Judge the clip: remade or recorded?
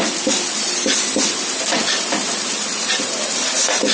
recorded